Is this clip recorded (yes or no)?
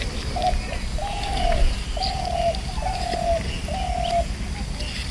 yes